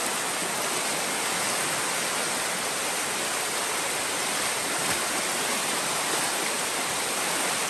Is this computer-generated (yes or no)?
no